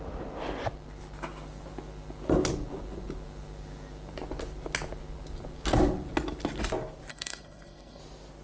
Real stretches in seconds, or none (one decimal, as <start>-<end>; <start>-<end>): 0.0-7.1; 8.0-8.4